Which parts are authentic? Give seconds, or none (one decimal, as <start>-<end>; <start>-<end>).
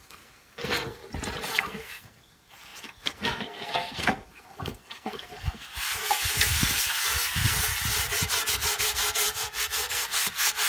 1.0-1.5; 7.7-8.5